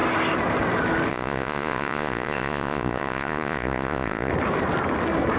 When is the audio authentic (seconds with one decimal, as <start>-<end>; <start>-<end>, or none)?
0.0-1.1; 4.3-5.4